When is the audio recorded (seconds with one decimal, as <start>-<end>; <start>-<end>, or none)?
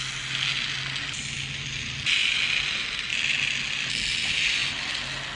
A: 0.0-5.4